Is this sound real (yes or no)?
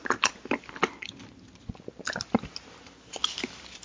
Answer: yes